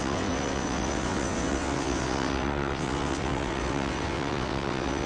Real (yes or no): no